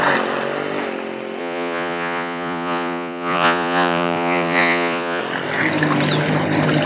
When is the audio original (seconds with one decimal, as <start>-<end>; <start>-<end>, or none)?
0.0-1.4; 5.2-6.9